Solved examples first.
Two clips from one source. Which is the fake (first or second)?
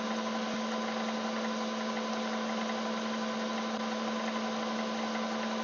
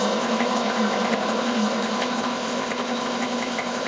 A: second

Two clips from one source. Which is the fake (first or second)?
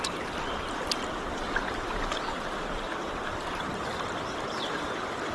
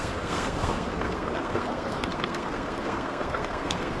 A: second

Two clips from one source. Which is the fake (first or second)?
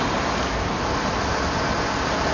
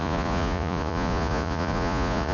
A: second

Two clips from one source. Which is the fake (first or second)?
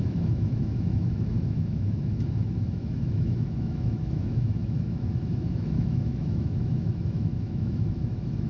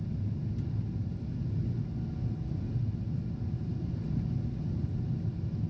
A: first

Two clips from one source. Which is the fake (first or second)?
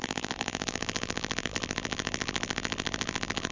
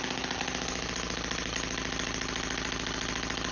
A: first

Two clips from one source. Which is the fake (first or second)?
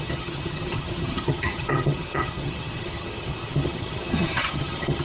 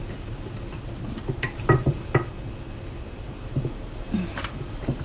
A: first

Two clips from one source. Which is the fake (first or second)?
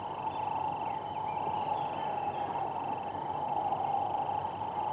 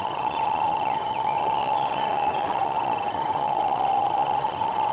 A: second